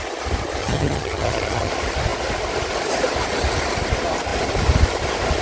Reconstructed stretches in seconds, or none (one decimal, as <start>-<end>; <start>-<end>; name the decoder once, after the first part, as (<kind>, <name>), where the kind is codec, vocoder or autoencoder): 0.6-1.7 (vocoder, HiFi-GAN)